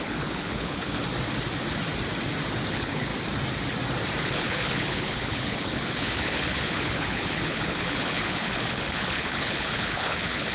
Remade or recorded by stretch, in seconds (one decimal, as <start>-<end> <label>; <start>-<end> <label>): 0.0-1.0 remade; 1.0-2.7 recorded; 2.7-3.1 remade; 3.1-4.2 recorded; 4.2-10.5 remade